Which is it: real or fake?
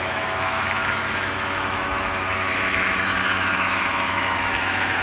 fake